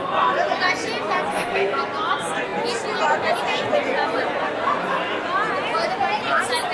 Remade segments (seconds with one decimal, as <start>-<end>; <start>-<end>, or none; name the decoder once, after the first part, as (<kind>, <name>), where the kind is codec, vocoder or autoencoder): 1.3-1.8 (codec, SNAC)